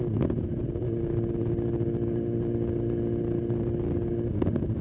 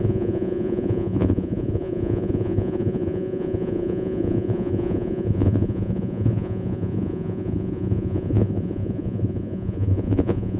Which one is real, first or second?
first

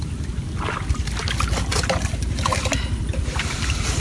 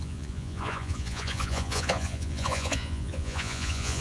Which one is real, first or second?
first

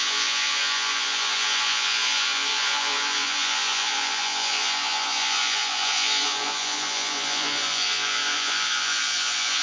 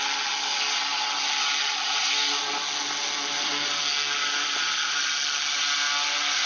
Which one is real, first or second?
second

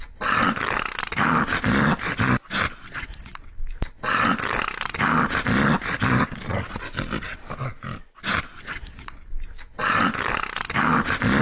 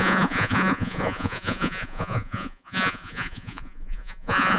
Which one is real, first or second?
first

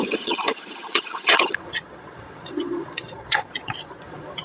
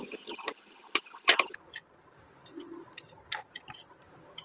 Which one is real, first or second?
second